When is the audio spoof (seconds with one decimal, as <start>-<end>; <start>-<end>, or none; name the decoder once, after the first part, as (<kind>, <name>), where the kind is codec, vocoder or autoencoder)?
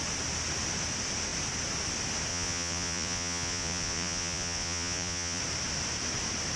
2.3-5.4 (vocoder, Vocos)